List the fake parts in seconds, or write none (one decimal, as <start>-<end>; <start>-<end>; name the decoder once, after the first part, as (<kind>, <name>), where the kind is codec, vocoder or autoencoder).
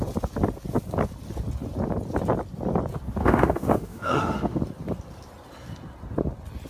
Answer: 3.2-4.6 (autoencoder, DAC-VAE)